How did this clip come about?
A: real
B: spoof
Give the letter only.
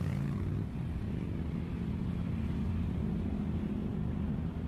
A